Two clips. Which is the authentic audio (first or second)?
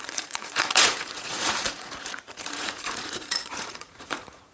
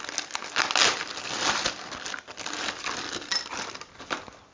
second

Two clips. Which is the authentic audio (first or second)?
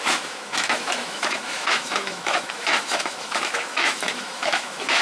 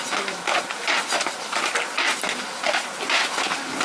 second